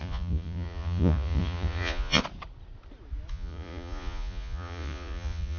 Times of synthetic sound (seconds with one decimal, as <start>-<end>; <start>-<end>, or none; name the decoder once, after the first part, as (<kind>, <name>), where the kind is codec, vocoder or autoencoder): 0.0-2.2 (vocoder, Vocos); 3.3-5.6